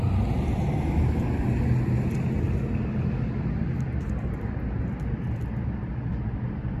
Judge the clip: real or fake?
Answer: real